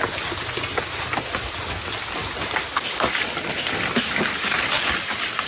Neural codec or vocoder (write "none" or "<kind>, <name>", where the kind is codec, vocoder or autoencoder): none